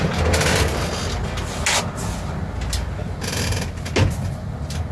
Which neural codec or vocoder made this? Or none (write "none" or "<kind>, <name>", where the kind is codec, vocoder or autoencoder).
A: none